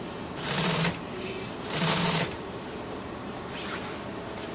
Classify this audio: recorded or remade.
remade